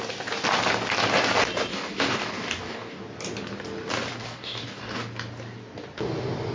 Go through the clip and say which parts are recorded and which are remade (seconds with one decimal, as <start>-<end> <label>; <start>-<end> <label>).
0.0-1.7 recorded; 1.7-3.0 remade; 3.0-4.2 recorded; 4.2-5.0 remade; 5.0-6.5 recorded